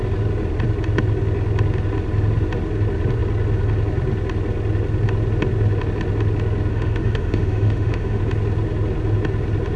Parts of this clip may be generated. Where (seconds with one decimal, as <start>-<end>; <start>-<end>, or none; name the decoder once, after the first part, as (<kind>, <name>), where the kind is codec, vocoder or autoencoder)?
6.7-8.2 (autoencoder, DAC-VAE)